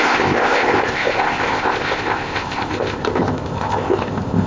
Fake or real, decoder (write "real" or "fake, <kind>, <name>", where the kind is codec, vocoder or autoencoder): fake, codec, ZipCodec